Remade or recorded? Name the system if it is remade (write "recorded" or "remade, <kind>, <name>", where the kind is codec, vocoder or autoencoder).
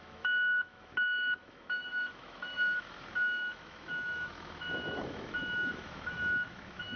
remade, autoencoder, DAC-VAE